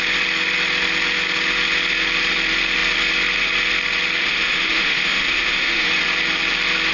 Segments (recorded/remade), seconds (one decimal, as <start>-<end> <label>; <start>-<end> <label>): 0.0-4.2 recorded; 4.2-5.9 remade; 5.9-6.9 recorded